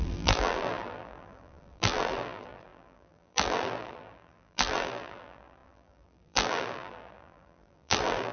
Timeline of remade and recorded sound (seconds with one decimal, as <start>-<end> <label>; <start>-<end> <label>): 0.0-8.3 remade

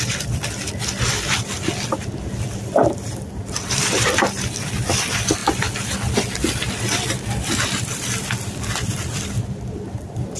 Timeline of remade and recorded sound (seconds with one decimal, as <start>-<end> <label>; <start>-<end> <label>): 0.0-10.4 remade

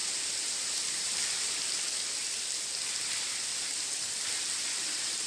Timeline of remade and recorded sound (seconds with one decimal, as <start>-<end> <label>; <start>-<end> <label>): 0.0-3.5 remade; 3.5-4.1 recorded; 4.1-5.3 remade

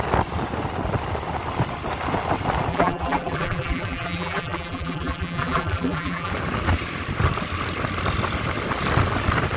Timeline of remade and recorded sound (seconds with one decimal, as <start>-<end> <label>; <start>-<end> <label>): 0.0-2.7 recorded; 2.7-6.3 remade; 6.3-9.6 recorded